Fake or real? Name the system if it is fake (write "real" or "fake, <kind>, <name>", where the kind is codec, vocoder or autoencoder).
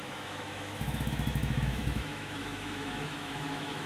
fake, autoencoder, DAC-VAE